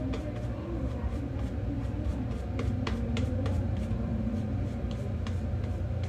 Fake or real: fake